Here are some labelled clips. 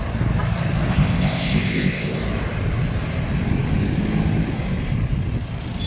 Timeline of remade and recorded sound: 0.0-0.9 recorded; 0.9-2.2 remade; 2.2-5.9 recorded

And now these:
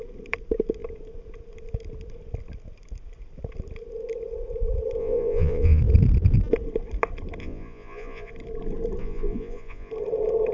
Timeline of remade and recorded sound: 0.0-5.0 recorded; 5.0-5.8 remade; 5.8-7.4 recorded; 7.4-8.3 remade; 8.3-9.0 recorded; 9.0-9.9 remade; 9.9-10.5 recorded

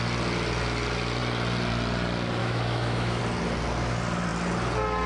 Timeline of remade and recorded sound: 0.0-2.4 recorded; 2.4-3.2 remade; 3.2-5.1 recorded